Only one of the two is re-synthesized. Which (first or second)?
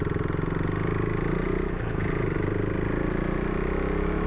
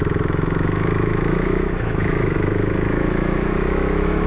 second